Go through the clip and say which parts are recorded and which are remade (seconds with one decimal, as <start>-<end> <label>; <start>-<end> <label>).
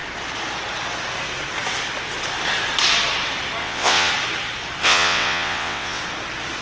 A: 0.0-3.6 recorded; 3.6-4.1 remade; 4.1-4.8 recorded; 4.8-6.0 remade; 6.0-6.6 recorded